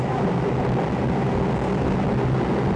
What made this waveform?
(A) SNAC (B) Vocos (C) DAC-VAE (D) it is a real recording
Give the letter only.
D